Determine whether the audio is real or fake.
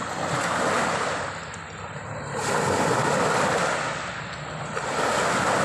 real